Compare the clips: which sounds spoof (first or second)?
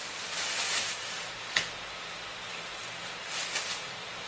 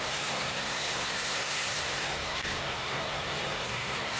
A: second